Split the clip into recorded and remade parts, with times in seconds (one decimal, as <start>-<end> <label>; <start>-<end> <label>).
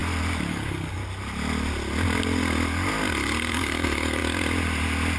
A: 0.0-0.5 recorded; 0.5-1.0 remade; 1.0-3.5 recorded; 3.5-4.2 remade; 4.2-5.2 recorded